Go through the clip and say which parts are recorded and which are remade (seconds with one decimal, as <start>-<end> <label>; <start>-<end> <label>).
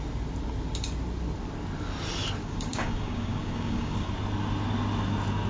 0.0-2.4 recorded; 2.4-4.1 remade; 4.1-5.5 recorded